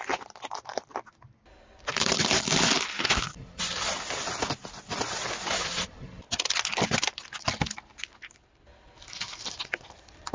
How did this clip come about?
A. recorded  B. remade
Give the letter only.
A